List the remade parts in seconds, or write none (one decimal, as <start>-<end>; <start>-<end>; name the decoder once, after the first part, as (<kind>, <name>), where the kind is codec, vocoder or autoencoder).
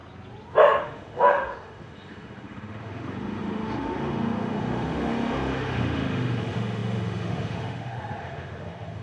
0.8-9.0 (autoencoder, DAC-VAE)